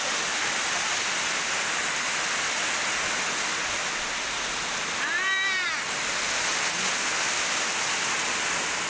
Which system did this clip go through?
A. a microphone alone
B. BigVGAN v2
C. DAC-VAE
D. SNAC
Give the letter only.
A